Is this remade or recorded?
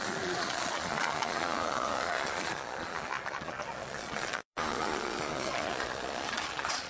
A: remade